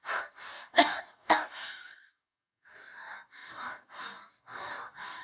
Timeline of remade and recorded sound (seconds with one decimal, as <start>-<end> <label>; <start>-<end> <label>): 0.0-5.2 remade